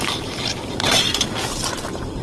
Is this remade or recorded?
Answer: remade